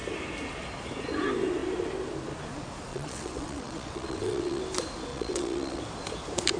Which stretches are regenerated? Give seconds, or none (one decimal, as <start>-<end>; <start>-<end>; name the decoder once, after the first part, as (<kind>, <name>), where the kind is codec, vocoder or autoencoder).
2.9-4.6 (vocoder, WaveNeXt); 5.1-5.8